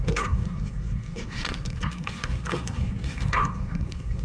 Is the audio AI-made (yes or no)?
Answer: yes